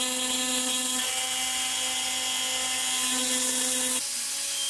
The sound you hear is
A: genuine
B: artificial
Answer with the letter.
A